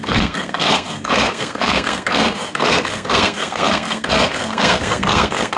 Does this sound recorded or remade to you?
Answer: remade